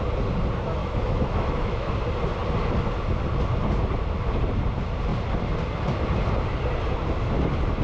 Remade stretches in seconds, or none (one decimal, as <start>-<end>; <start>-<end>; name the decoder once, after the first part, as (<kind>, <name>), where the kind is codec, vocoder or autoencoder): 0.8-1.9 (autoencoder, DAC-VAE)